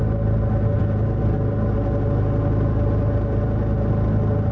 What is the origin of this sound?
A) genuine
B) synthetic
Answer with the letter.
A